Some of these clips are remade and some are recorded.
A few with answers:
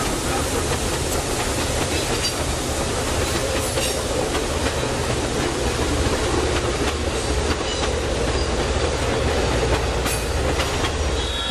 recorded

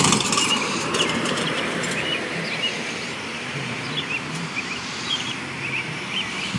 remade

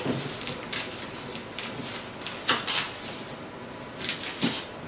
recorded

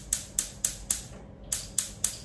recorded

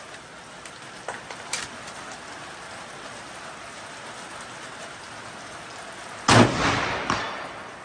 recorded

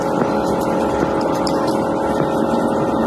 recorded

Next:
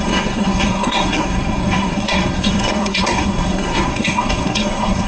remade